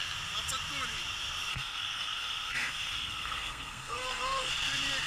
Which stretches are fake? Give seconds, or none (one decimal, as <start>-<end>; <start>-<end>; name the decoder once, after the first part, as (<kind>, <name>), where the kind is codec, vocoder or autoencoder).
1.5-4.5 (codec, SNAC)